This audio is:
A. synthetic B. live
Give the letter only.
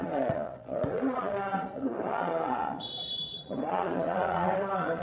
A